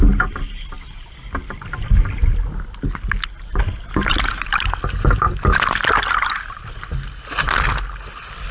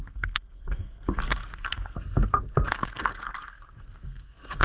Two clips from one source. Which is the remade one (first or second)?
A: second